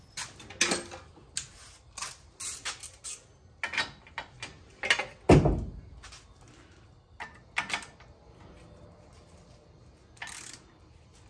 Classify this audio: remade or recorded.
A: recorded